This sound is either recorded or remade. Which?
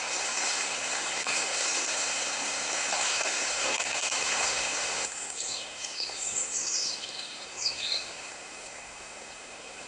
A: remade